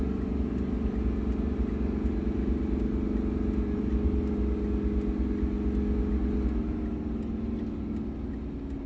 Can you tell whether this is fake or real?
real